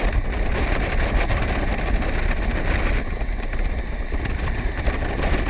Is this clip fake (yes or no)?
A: no